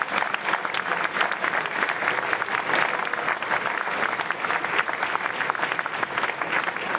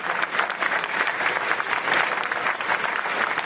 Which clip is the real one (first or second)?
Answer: first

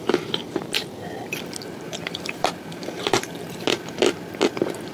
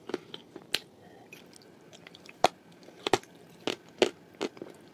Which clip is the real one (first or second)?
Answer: second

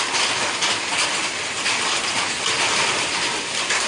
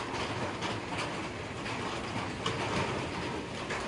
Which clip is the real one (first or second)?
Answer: second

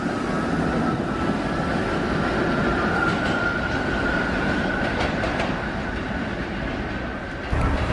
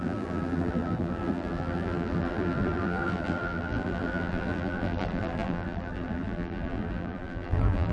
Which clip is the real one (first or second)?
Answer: first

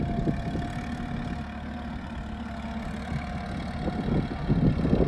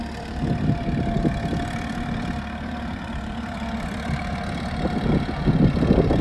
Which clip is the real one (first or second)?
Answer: first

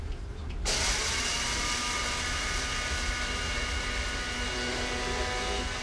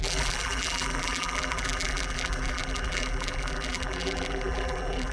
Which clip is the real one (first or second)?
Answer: first